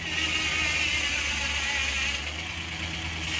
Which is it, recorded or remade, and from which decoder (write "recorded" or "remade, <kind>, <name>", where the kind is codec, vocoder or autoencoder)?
recorded